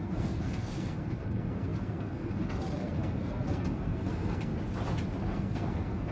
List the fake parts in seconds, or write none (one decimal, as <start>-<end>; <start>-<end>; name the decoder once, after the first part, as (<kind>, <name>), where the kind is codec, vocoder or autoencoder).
0.0-4.5 (codec, SNAC); 5.3-6.1